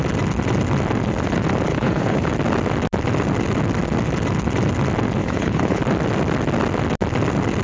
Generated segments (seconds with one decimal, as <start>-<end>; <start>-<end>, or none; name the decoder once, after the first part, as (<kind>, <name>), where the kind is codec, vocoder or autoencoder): 1.7-2.3 (codec, HILCodec); 5.2-5.8